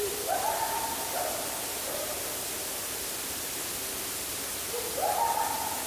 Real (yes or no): yes